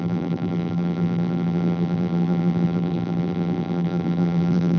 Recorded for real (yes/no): no